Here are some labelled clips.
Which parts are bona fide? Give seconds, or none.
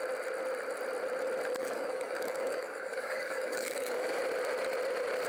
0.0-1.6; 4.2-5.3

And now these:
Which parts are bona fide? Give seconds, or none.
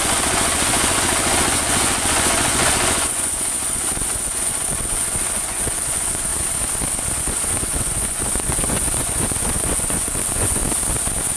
6.3-7.2; 10.6-11.4